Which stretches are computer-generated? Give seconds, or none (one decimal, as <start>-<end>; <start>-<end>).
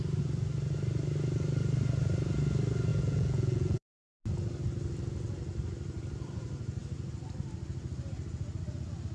2.9-4.2